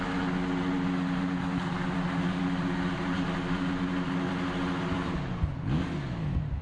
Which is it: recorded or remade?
recorded